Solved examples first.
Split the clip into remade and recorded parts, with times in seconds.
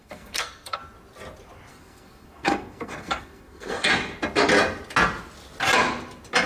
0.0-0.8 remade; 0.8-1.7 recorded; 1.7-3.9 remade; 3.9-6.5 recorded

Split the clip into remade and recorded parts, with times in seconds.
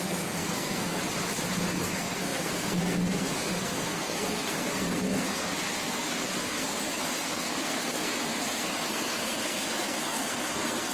0.0-1.0 remade; 1.0-1.7 recorded; 1.7-10.9 remade